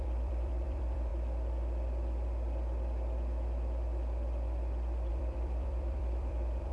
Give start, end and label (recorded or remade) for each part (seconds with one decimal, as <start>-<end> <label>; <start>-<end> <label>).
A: 0.0-1.1 remade; 1.1-5.1 recorded; 5.1-6.7 remade